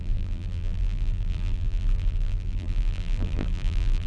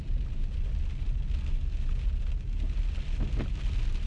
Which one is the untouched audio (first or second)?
second